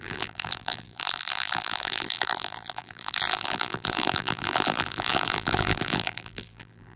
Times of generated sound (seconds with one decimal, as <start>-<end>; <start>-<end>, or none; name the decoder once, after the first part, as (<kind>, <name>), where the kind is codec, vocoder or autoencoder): 0.0-7.0 (vocoder, BigVGAN v2)